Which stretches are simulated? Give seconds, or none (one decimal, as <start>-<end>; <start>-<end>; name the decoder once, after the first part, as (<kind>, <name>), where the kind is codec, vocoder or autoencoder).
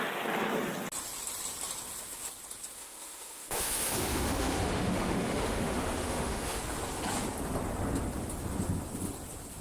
2.8-6.6 (autoencoder, DAC-VAE)